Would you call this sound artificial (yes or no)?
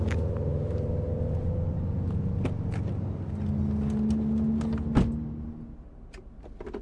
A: no